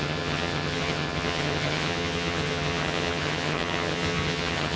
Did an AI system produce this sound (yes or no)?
yes